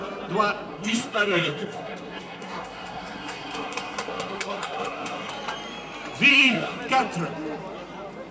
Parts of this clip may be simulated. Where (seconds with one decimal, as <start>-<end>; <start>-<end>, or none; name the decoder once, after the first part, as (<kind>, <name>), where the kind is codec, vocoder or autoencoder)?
0.7-5.3 (codec, SNAC); 6.3-6.8

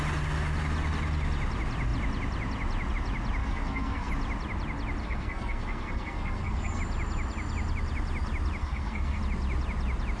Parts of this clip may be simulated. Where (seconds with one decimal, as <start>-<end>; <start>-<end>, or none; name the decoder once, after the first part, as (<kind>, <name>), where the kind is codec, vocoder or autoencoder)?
3.4-4.1 (codec, SNAC); 5.0-6.8; 8.6-9.2

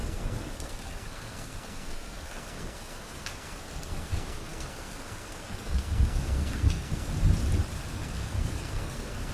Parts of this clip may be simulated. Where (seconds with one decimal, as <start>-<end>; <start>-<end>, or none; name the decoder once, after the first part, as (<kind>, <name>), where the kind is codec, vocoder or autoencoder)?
0.0-7.1 (codec, SNAC); 7.9-9.3

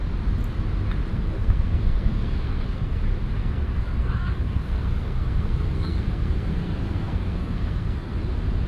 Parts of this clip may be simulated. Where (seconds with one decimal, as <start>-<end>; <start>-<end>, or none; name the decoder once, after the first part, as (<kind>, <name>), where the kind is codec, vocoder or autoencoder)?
1.1-3.0 (codec, SNAC); 3.4-8.2

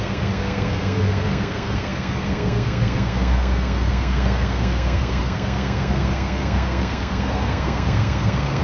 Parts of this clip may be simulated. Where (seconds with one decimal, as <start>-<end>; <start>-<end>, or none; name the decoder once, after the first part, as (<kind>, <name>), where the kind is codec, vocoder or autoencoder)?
0.0-8.6 (codec, SNAC)

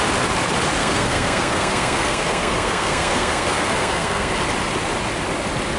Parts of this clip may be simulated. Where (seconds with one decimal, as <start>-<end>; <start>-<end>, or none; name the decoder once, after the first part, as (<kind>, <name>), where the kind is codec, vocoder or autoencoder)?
0.8-4.3 (codec, SNAC)